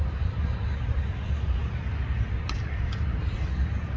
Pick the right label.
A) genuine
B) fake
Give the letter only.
A